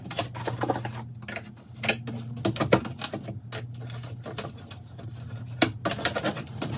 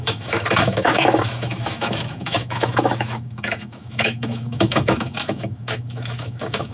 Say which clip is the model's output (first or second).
second